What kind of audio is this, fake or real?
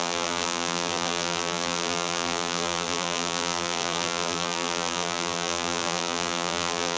fake